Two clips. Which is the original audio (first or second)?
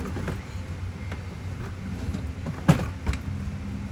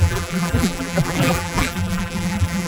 first